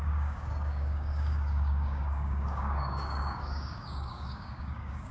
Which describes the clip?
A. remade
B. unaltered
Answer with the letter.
A